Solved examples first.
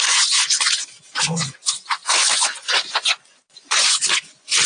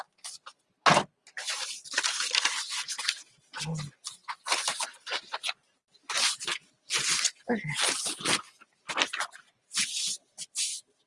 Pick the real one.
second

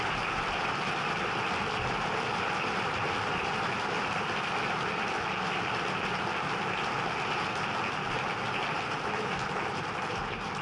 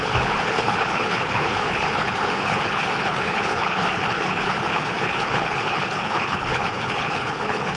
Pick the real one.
first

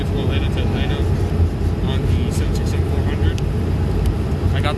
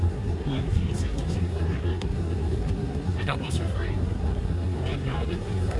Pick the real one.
first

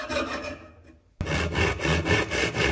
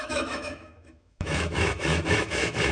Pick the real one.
first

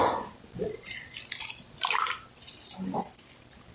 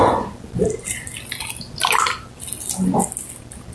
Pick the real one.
second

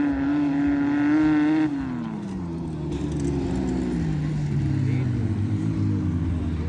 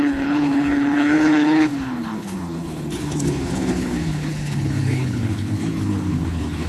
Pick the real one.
first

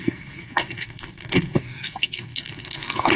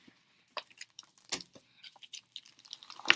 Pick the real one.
second